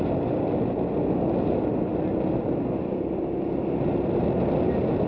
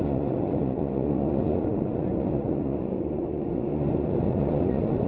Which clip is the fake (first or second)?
second